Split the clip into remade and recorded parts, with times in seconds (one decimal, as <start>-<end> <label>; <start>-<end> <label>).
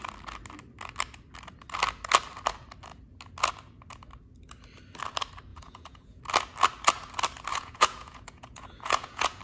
0.0-5.5 recorded; 5.5-6.2 remade; 6.2-7.5 recorded; 7.5-9.4 remade